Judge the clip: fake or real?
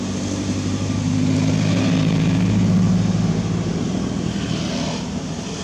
real